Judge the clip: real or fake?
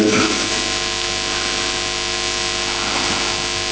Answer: real